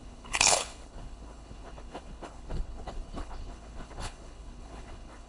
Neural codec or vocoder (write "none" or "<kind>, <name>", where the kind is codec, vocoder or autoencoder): codec, HILCodec